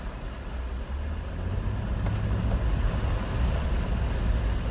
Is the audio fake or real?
real